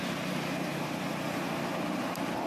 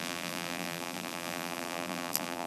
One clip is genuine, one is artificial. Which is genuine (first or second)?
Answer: first